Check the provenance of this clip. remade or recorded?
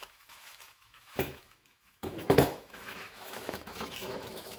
remade